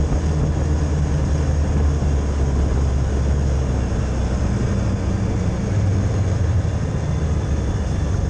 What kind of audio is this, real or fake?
real